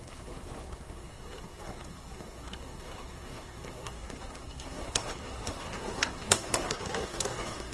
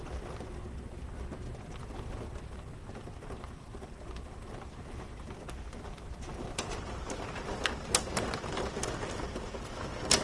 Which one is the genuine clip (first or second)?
second